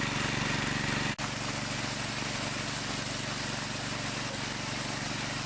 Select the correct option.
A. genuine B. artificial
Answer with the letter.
A